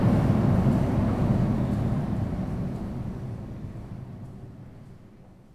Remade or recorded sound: recorded